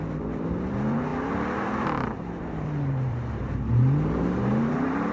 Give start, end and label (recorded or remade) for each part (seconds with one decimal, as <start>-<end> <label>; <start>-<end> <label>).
0.0-5.1 remade